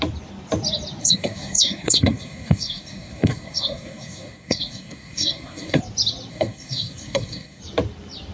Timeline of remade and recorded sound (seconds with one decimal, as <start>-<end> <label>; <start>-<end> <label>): 0.0-1.0 recorded; 1.0-5.8 remade; 5.8-6.3 recorded; 6.3-7.6 remade; 7.6-8.3 recorded